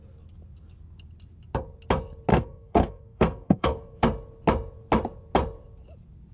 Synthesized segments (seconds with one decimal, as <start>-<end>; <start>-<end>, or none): 2.3-4.0